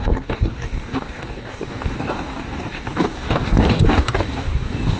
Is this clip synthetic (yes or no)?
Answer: yes